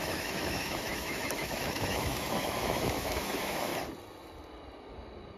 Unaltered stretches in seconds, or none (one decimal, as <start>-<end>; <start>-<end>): 3.7-5.4